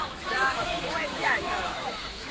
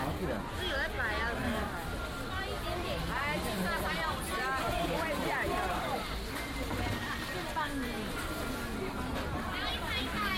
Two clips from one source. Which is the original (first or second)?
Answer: second